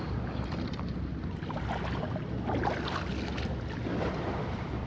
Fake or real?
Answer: real